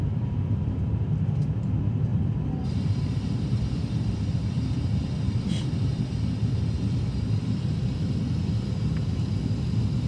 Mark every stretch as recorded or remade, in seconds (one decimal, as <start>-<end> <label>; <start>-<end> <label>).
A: 0.0-2.1 recorded; 2.1-6.0 remade; 6.0-10.1 recorded

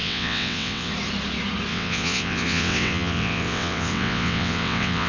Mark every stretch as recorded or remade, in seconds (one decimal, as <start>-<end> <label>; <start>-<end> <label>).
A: 0.0-0.9 remade; 0.9-1.7 recorded; 1.7-5.1 remade

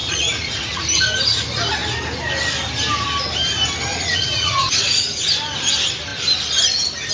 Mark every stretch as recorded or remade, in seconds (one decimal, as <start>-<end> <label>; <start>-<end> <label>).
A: 0.0-0.8 remade; 0.8-3.9 recorded; 3.9-5.2 remade; 5.2-7.1 recorded

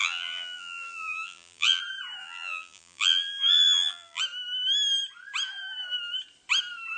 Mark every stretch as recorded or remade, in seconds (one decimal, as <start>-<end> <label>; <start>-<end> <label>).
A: 0.0-1.8 remade; 1.8-2.2 recorded; 2.2-4.2 remade; 4.2-7.0 recorded

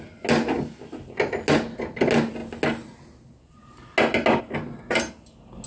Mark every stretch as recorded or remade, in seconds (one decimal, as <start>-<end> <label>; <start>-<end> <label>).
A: 0.0-5.7 recorded